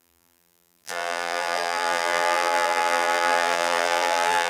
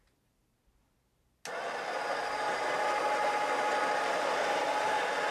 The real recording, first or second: second